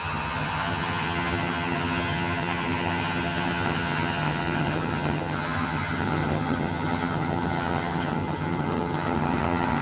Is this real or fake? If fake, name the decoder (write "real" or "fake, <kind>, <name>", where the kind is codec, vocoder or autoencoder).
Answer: fake, vocoder, HiFi-GAN